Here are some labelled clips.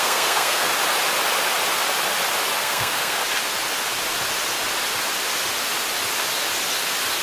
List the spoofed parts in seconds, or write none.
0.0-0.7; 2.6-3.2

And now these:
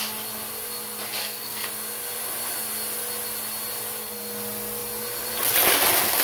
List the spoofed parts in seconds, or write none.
1.2-1.7

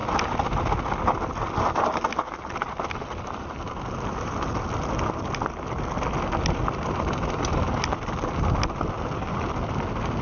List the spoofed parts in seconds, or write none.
none

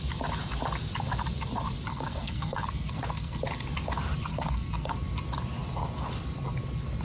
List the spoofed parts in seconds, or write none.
1.9-3.4; 4.3-4.9